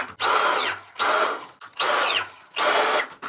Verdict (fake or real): real